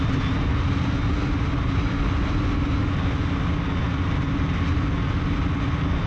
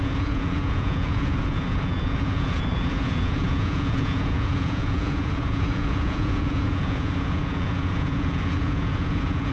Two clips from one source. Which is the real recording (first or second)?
first